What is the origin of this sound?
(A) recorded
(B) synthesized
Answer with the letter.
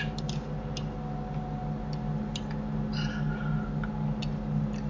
A